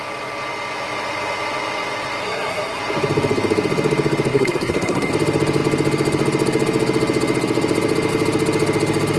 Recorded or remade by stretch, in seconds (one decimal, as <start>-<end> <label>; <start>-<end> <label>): 0.0-2.2 recorded; 2.2-2.8 remade; 2.8-4.3 recorded; 4.3-5.1 remade; 5.1-9.2 recorded

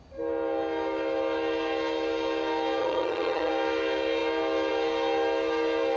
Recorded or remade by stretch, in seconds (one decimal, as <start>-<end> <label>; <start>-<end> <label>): 0.0-2.8 recorded; 2.8-3.5 remade; 3.5-6.0 recorded

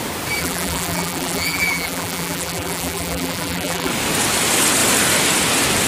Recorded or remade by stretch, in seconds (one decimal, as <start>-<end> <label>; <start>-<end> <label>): 0.0-0.4 recorded; 0.4-3.9 remade; 3.9-5.9 recorded

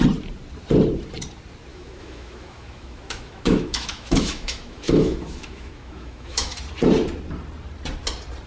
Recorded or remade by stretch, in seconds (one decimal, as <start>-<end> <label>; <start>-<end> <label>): 0.0-1.7 recorded; 1.7-6.6 remade; 6.6-8.5 recorded